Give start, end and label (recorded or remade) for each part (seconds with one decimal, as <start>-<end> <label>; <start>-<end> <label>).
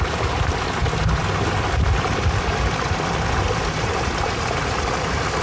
0.0-5.4 recorded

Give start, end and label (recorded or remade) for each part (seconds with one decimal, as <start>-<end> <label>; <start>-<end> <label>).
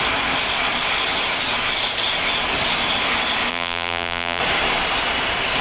0.0-3.5 recorded; 3.5-4.4 remade; 4.4-5.6 recorded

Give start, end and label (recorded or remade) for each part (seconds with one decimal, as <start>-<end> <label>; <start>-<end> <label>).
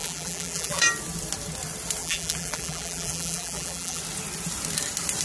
0.0-0.8 remade; 0.8-2.0 recorded; 2.0-4.0 remade; 4.0-5.2 recorded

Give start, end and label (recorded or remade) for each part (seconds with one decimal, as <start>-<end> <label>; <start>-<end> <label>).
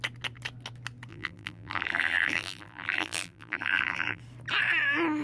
0.0-1.1 recorded; 1.1-4.2 remade; 4.2-5.2 recorded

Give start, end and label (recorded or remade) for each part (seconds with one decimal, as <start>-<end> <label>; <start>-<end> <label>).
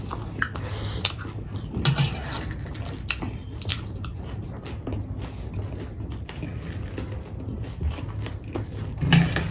0.0-3.7 recorded; 3.7-4.5 remade; 4.5-9.5 recorded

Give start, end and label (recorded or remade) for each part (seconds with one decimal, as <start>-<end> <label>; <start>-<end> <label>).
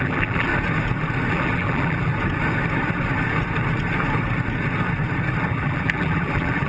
0.0-0.5 remade; 0.5-1.3 recorded; 1.3-2.1 remade; 2.1-5.4 recorded; 5.4-6.7 remade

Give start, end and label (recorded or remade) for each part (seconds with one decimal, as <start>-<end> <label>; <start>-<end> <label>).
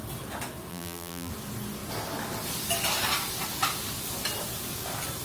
0.0-0.7 recorded; 0.7-1.3 remade; 1.3-5.2 recorded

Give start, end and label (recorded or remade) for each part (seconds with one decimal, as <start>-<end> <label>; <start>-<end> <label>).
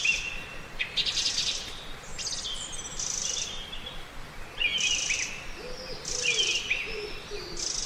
0.0-7.9 recorded